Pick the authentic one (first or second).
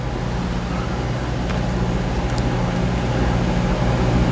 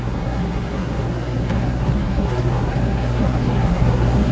first